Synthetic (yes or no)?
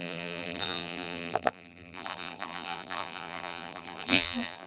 yes